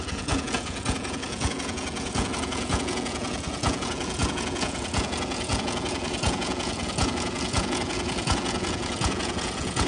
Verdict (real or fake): fake